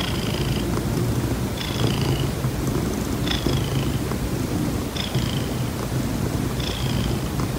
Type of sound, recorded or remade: recorded